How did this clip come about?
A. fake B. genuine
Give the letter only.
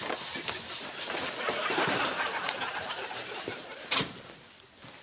B